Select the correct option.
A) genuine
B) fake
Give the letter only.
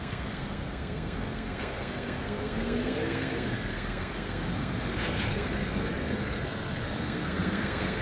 B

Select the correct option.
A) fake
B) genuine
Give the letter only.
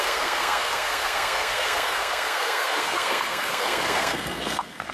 A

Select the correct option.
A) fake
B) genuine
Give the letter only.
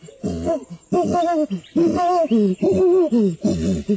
B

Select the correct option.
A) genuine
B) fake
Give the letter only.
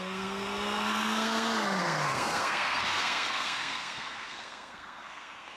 B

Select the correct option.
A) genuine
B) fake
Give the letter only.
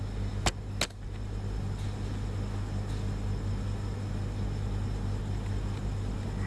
A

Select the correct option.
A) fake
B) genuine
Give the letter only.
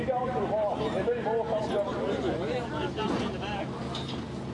B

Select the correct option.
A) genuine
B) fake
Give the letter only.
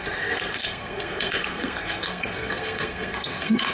B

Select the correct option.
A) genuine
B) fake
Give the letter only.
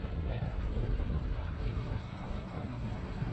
B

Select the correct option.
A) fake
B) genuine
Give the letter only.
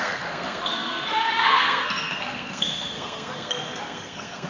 A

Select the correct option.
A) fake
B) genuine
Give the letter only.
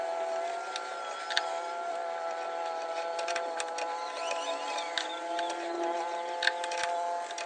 B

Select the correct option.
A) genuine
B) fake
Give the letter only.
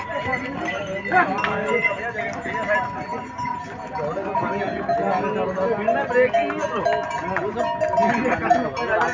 A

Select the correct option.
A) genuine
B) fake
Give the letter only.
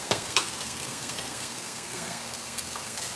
B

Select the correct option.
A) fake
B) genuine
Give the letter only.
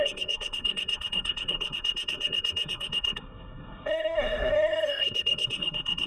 A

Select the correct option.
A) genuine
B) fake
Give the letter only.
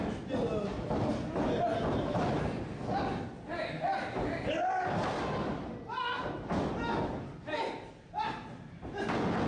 A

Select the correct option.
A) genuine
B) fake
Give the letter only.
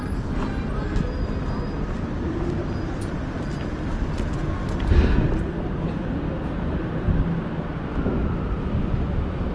A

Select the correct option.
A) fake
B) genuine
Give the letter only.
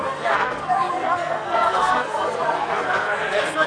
A